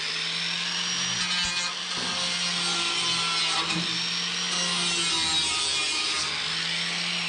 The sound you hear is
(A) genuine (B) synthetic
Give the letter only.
A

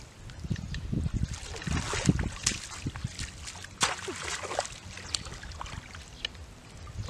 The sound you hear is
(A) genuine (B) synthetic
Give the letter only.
A